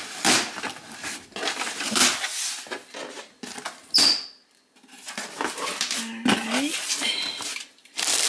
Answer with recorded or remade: recorded